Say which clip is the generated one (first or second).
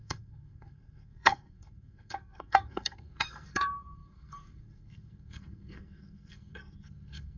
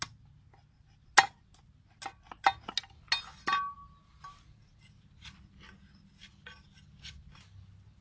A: first